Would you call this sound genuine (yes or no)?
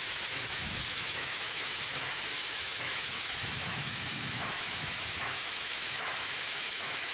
no